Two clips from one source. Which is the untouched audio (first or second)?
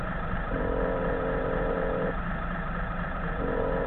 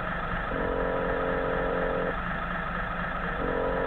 second